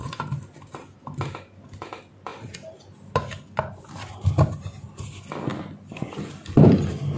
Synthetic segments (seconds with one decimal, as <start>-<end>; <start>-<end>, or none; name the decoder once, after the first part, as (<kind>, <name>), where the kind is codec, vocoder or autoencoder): none